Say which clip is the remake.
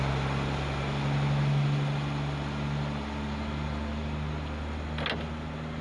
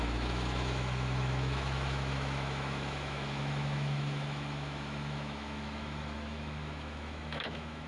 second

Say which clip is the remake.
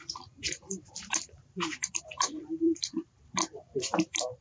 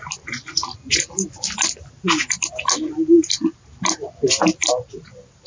first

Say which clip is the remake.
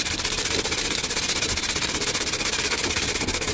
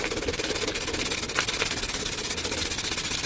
first